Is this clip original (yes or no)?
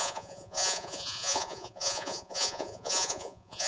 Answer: no